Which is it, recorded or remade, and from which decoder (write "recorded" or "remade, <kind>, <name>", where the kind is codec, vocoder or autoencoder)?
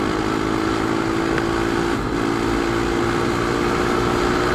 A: recorded